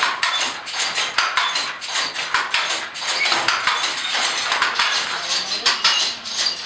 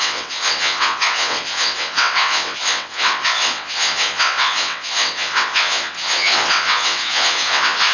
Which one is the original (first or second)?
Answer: first